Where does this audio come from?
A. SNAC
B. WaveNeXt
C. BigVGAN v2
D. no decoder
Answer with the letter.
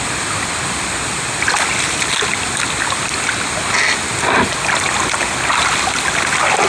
D